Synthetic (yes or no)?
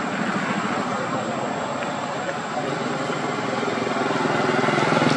no